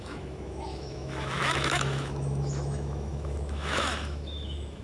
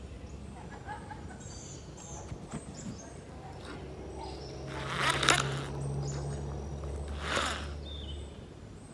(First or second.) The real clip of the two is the second